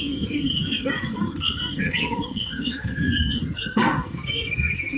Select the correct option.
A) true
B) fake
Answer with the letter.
B